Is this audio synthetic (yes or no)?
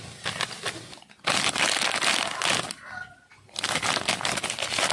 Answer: no